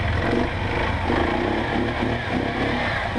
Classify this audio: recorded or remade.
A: recorded